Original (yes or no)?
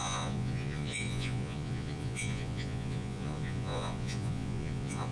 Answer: no